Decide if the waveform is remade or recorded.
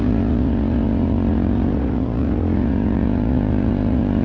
remade